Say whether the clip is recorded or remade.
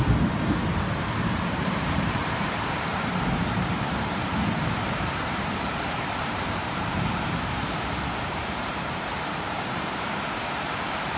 remade